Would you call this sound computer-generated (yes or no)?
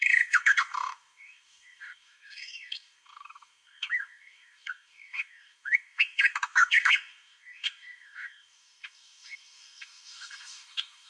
yes